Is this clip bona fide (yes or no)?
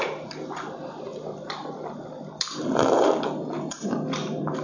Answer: yes